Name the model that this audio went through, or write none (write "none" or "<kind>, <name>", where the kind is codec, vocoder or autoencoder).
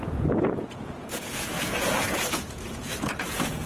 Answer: vocoder, Vocos